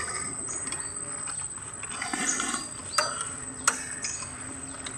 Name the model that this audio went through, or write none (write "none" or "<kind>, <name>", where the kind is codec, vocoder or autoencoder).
none